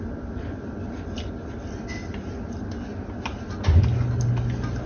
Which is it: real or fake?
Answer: real